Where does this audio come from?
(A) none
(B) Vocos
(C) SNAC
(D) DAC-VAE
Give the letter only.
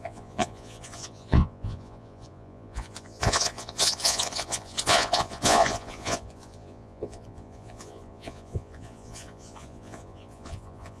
B